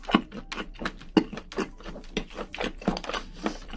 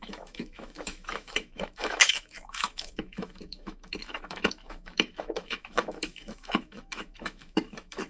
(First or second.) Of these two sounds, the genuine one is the first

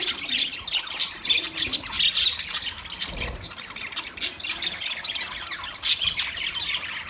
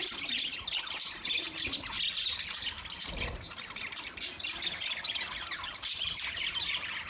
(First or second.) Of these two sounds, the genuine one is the first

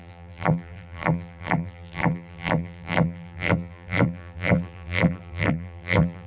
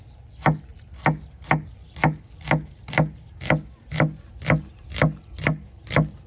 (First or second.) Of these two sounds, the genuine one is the second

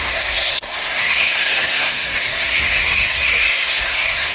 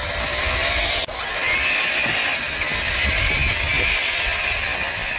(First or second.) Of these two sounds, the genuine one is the second